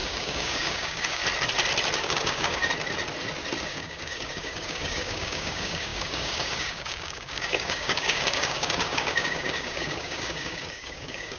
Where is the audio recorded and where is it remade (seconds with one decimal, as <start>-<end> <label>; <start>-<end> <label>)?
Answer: 0.0-1.2 remade; 1.2-2.0 recorded; 2.0-2.6 remade; 2.6-3.6 recorded; 3.6-11.4 remade